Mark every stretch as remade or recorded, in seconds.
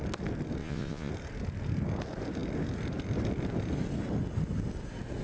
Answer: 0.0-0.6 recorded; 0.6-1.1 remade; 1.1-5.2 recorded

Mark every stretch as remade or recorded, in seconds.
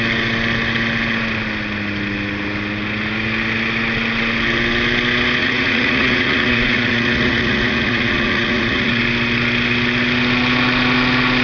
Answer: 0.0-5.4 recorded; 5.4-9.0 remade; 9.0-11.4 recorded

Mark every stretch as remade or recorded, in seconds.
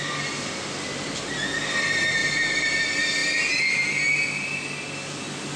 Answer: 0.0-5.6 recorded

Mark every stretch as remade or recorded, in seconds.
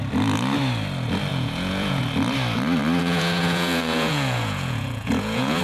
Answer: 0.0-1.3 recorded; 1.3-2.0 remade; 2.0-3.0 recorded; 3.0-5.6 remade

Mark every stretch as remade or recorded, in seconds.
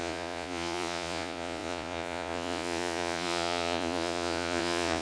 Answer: 0.0-5.0 remade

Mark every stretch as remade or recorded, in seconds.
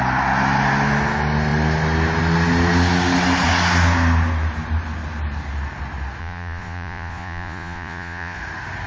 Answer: 0.0-6.2 recorded; 6.2-8.4 remade; 8.4-8.9 recorded